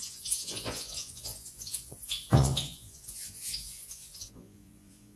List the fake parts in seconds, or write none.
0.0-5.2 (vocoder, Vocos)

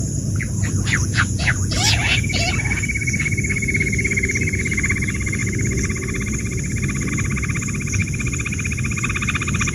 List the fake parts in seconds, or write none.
1.0-2.5 (vocoder, Vocos)

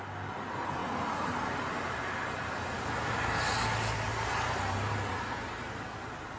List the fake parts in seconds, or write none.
0.8-2.5 (vocoder, BigVGAN v2); 4.1-5.7